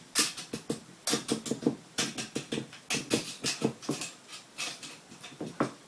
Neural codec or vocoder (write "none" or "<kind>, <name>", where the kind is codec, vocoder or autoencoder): none